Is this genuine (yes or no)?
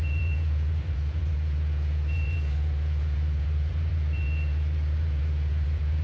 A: no